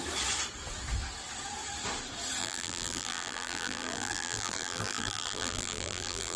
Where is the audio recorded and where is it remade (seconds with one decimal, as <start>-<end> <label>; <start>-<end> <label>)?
0.0-2.4 recorded; 2.4-6.4 remade